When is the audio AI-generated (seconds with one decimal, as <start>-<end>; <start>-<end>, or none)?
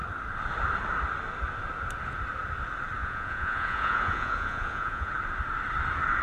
3.0-5.1